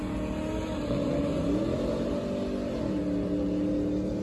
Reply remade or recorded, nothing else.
recorded